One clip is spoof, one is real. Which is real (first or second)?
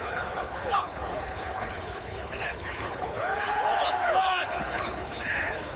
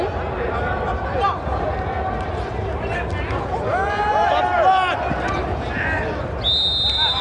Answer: second